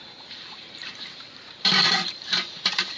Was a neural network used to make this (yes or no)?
yes